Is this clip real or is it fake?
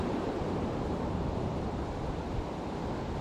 fake